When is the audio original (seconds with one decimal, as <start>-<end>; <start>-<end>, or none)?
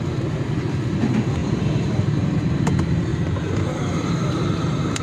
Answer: 0.0-1.4; 2.7-3.1